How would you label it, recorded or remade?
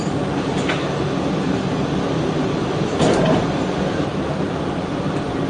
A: recorded